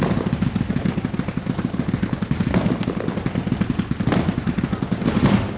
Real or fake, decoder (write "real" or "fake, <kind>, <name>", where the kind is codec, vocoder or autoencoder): real